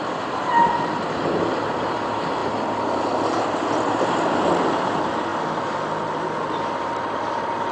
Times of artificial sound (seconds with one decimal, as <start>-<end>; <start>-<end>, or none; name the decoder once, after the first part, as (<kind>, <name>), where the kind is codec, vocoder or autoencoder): none